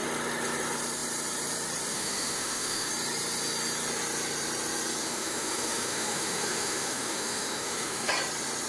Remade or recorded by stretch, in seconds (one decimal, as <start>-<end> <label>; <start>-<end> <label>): 0.0-1.9 recorded; 1.9-2.9 remade; 2.9-5.0 recorded; 5.0-8.1 remade; 8.1-8.7 recorded